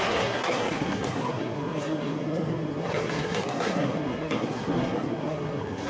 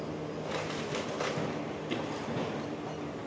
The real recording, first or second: second